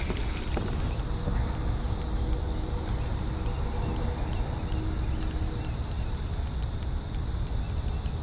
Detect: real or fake real